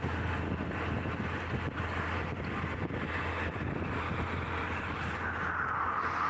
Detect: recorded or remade recorded